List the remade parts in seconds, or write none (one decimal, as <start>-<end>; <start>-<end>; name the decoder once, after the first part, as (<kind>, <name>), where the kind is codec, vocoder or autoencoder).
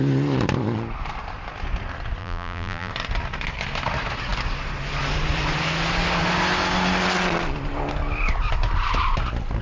2.2-2.9 (vocoder, BigVGAN v2)